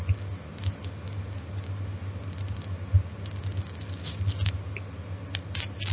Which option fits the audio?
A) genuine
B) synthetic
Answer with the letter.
A